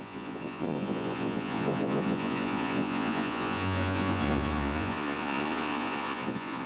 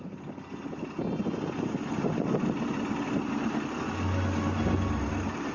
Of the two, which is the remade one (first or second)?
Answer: first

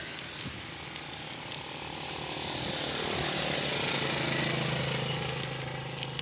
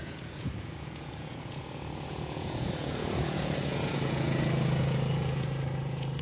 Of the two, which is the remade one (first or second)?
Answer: second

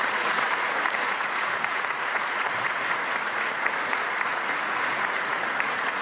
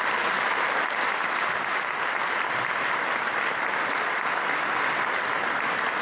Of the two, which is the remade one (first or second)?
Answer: first